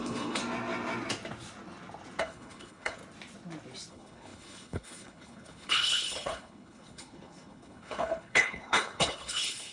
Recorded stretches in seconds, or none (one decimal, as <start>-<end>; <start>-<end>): 0.4-2.2; 3.0-3.9